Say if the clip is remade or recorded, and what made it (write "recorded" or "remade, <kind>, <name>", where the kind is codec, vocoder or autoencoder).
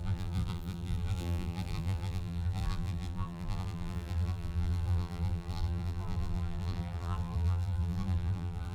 remade, vocoder, BigVGAN v2